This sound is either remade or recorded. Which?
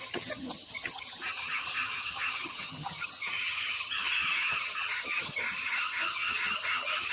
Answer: remade